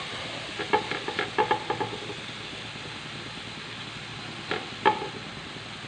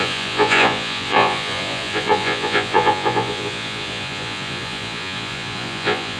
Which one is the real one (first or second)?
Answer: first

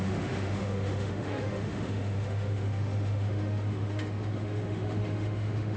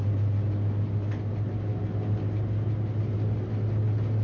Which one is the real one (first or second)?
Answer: second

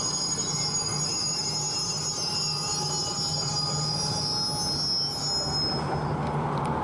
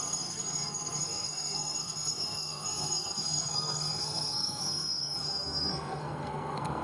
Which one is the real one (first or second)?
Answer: first